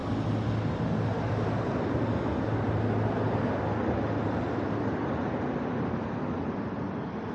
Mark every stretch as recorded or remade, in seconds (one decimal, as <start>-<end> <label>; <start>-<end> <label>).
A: 0.0-7.3 recorded